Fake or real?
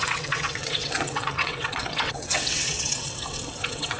fake